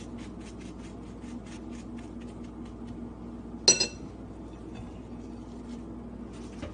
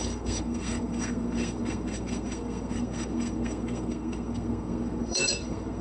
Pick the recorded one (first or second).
first